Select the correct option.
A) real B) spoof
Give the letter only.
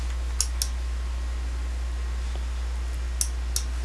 A